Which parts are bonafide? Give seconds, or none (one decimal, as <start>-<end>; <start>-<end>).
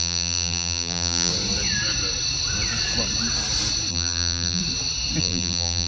1.3-3.9; 4.6-5.2